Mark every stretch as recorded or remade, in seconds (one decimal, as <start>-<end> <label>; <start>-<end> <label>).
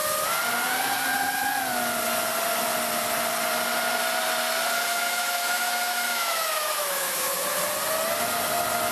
0.0-4.9 recorded; 4.9-7.6 remade; 7.6-8.9 recorded